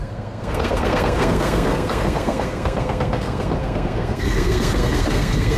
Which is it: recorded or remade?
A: remade